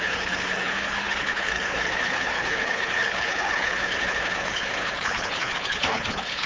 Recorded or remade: remade